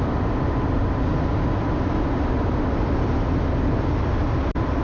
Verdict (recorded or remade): recorded